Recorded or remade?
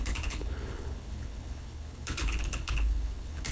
remade